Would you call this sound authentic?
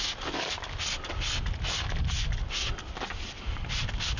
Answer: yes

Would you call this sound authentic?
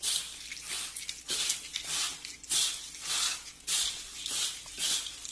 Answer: yes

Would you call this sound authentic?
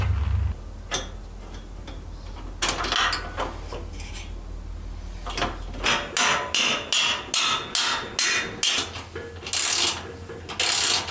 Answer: yes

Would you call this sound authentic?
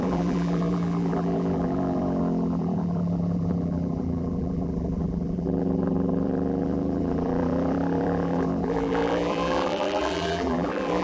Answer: no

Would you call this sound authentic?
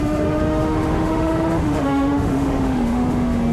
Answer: no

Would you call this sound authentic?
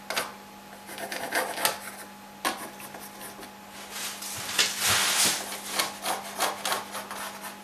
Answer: yes